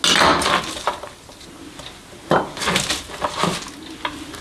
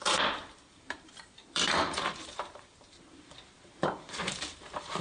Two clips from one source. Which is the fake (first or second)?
second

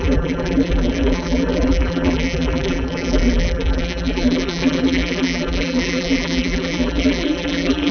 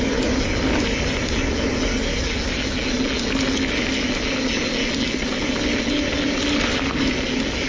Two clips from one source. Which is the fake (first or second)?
first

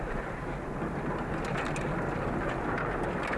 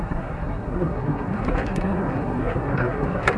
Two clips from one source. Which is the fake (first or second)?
second